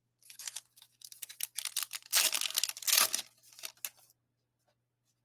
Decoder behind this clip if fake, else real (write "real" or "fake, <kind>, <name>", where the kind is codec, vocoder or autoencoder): real